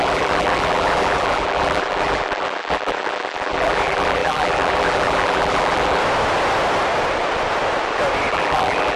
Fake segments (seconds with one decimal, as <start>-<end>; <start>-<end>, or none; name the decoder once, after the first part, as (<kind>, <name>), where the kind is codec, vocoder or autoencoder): 0.0-6.0 (vocoder, BigVGAN v2); 8.3-9.0